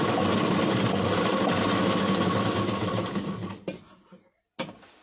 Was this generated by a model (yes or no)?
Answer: no